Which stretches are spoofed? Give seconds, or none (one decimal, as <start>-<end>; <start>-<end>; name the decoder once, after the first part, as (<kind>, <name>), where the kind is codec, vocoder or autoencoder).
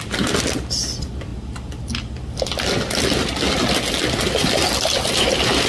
0.0-5.7 (vocoder, BigVGAN v2)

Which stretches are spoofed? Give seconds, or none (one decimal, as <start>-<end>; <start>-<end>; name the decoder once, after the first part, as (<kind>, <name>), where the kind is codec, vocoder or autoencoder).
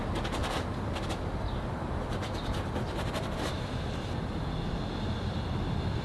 0.0-6.0 (vocoder, BigVGAN v2)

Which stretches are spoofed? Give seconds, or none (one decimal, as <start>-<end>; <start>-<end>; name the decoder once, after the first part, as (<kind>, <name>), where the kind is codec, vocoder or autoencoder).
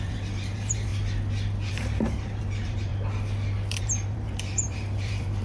0.0-0.9 (vocoder, BigVGAN v2); 1.7-2.9; 3.8-5.4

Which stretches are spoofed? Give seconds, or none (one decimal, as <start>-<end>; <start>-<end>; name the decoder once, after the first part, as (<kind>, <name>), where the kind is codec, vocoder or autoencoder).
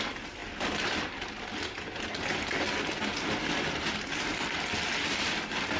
none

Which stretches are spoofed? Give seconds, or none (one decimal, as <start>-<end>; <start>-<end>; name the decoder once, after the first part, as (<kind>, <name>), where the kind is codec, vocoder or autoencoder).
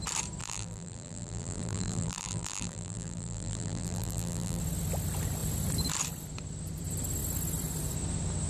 0.4-4.6 (vocoder, BigVGAN v2)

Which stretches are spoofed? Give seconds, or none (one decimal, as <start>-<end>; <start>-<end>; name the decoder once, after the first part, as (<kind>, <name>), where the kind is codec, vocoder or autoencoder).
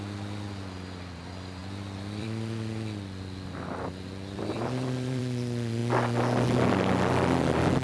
1.6-5.2 (vocoder, BigVGAN v2)